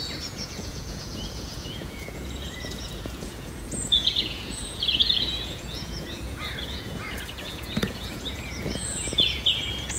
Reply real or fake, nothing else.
fake